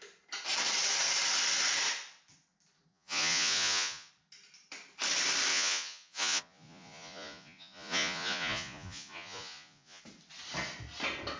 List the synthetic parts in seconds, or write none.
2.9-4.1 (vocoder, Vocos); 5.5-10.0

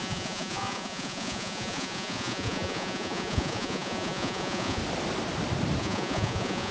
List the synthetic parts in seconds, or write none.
0.0-4.8 (vocoder, Vocos); 5.8-6.7